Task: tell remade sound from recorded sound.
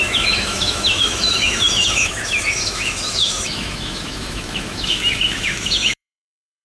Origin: remade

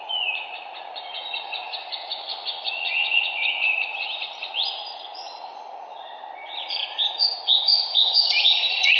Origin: remade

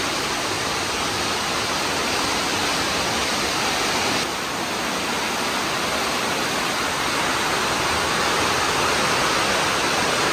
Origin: recorded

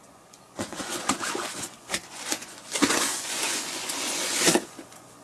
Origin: remade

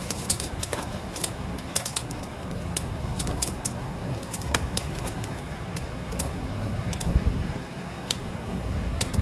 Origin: remade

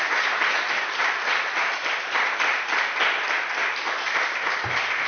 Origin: recorded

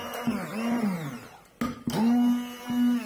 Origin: recorded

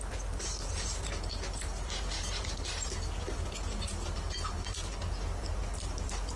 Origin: recorded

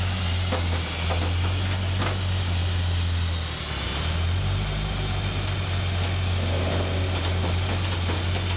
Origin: recorded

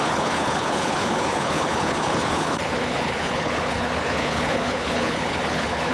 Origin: remade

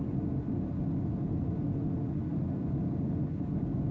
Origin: recorded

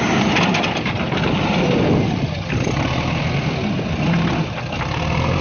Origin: remade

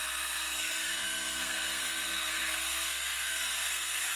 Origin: remade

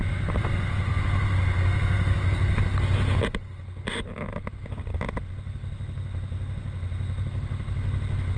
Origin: recorded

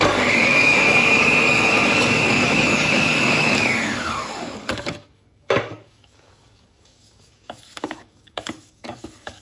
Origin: remade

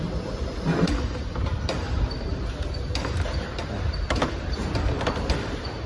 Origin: remade